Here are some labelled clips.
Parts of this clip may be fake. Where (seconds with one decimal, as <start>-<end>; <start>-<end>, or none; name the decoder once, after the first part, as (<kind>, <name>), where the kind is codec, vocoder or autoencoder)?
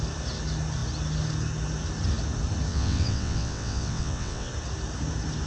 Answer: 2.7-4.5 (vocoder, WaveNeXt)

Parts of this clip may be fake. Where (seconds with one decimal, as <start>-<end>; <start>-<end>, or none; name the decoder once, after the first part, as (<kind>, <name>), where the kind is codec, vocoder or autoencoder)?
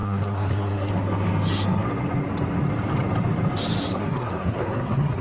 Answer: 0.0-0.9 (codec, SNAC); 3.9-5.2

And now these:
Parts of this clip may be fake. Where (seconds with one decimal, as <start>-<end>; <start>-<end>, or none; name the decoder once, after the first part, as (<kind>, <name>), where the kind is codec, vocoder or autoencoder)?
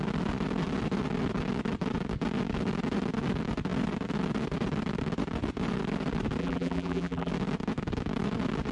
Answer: 6.4-7.3 (vocoder, BigVGAN v2)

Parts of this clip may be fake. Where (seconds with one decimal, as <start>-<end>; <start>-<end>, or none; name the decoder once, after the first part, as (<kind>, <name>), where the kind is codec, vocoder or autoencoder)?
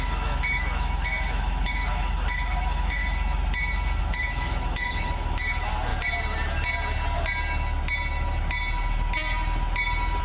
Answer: 0.0-3.0 (autoencoder, DAC-VAE); 4.0-5.9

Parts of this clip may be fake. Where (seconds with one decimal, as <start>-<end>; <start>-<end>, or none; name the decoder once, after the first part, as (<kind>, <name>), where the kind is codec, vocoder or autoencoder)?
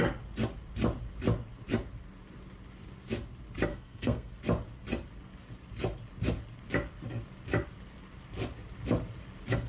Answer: 3.7-4.3 (codec, SNAC)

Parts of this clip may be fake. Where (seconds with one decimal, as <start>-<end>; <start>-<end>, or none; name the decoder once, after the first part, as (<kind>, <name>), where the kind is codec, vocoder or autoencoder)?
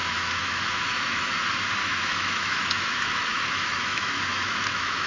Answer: 0.0-1.3 (autoencoder, DAC-VAE); 1.8-5.1